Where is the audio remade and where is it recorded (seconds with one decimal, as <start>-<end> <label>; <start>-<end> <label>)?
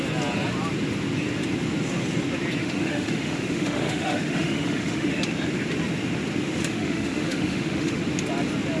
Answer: 0.0-2.6 recorded; 2.6-5.2 remade; 5.2-6.4 recorded; 6.4-8.0 remade; 8.0-8.8 recorded